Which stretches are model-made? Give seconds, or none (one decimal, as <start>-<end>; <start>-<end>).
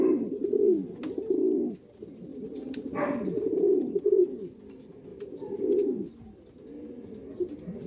2.3-4.3